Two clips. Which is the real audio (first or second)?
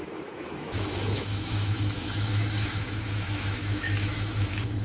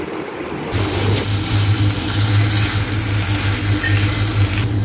second